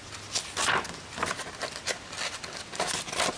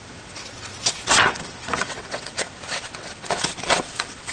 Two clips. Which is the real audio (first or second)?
first